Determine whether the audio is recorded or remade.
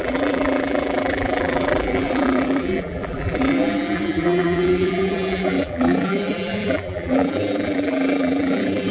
remade